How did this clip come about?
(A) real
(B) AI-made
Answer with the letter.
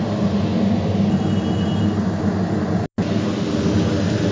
A